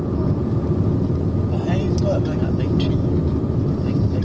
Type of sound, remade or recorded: recorded